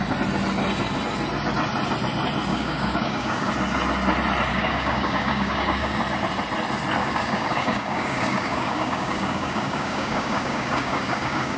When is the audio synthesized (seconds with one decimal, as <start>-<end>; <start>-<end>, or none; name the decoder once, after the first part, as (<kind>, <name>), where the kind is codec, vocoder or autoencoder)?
2.5-3.5 (codec, DAC); 4.5-6.0; 7.0-11.6